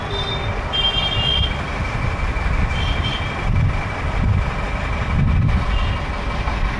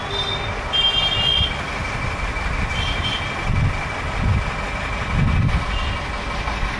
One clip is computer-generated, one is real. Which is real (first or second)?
second